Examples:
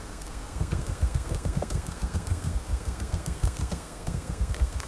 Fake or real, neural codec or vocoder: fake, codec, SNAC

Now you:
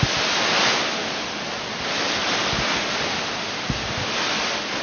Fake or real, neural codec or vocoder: real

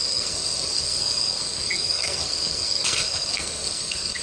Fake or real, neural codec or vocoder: fake, codec, SNAC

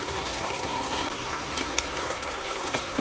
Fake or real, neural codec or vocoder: fake, codec, SNAC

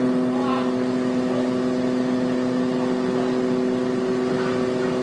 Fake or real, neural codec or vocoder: real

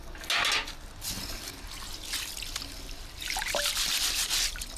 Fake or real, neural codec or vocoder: real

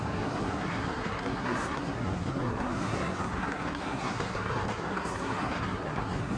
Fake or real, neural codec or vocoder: fake, codec, SNAC